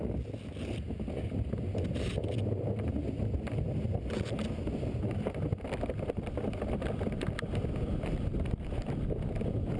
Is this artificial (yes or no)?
no